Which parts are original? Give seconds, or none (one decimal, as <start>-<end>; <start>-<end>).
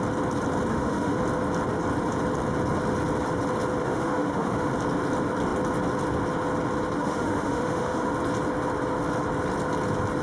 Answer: 0.0-0.7; 1.2-3.8; 4.7-7.0; 8.1-10.2